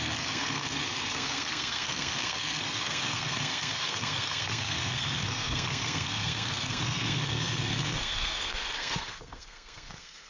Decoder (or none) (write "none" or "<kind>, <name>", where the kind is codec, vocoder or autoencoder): codec, SNAC